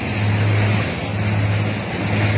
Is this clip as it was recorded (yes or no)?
yes